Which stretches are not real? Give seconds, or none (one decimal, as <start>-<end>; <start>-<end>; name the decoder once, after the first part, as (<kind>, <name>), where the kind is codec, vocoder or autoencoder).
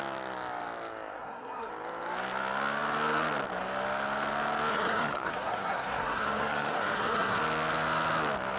1.1-1.7 (codec, SNAC); 4.7-7.4